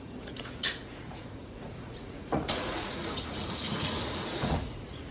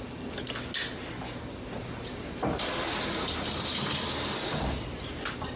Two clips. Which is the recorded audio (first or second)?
second